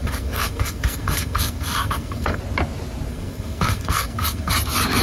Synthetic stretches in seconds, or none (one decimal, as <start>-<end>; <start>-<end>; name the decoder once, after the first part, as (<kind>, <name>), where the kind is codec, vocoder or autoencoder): 0.0-2.4 (codec, SNAC); 3.1-4.5